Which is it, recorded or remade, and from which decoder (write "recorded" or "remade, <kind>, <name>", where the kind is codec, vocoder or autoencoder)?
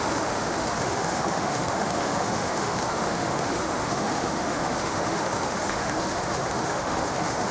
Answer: remade, autoencoder, DAC-VAE